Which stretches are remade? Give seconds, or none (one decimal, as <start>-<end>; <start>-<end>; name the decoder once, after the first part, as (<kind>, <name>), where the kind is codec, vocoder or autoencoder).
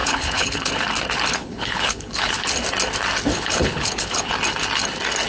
0.0-0.7 (codec, HILCodec); 1.4-2.3; 3.3-4.3